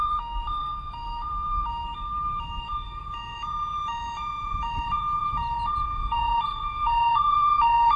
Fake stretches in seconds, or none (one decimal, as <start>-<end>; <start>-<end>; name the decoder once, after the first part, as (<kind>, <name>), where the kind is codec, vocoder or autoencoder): 0.0-8.0 (vocoder, Vocos)